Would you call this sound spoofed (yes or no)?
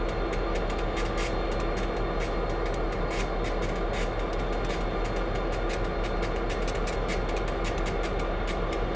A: no